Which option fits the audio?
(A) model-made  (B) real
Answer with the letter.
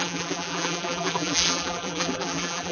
A